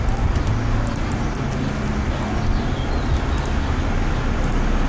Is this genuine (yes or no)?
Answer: yes